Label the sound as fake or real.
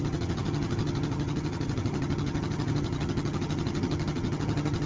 fake